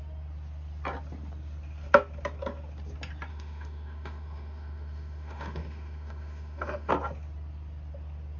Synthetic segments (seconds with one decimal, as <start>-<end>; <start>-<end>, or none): 3.3-6.9